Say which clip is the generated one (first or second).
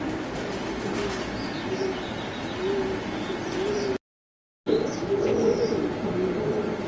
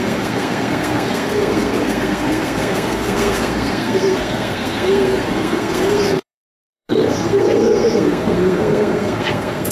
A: second